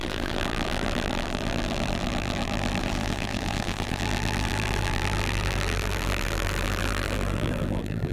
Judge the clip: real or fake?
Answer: fake